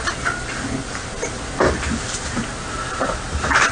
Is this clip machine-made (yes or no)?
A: no